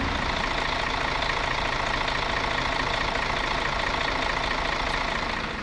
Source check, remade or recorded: recorded